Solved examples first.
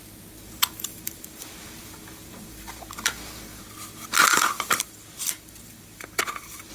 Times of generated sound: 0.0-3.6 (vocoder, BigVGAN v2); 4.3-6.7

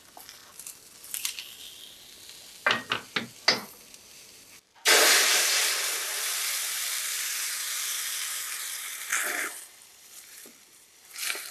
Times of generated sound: 0.0-0.4 (vocoder, BigVGAN v2); 5.3-9.1; 9.8-11.5